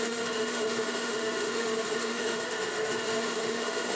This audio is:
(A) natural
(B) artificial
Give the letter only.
B